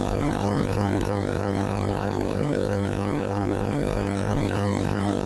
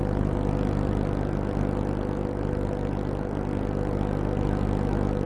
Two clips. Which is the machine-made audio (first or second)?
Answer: first